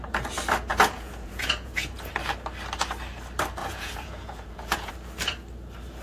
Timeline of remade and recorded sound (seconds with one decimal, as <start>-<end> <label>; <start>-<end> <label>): 0.0-0.7 recorded; 0.7-2.1 remade; 2.1-3.6 recorded; 3.6-4.9 remade; 4.9-6.0 recorded

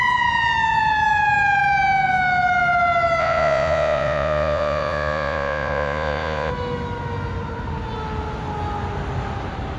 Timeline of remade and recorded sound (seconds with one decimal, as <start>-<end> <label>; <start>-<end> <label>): 0.0-3.2 recorded; 3.2-6.5 remade; 6.5-9.8 recorded

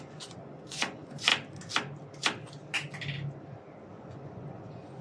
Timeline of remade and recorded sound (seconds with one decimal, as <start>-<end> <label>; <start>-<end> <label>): 0.0-1.3 remade; 1.3-3.9 recorded; 3.9-5.0 remade

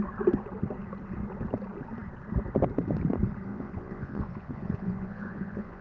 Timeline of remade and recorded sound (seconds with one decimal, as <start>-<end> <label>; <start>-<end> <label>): 0.0-3.5 recorded; 3.5-5.8 remade

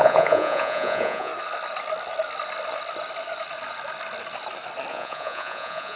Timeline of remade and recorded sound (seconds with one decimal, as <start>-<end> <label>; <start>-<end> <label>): 0.0-1.3 remade; 1.3-4.9 recorded; 4.9-6.0 remade